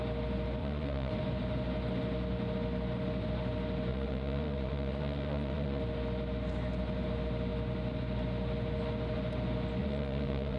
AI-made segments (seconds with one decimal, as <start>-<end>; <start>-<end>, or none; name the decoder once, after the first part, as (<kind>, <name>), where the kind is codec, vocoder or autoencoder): 0.6-1.1 (vocoder, Vocos); 3.9-5.8; 9.8-10.6